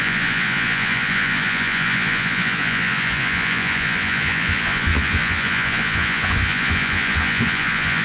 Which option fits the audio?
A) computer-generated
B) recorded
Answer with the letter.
A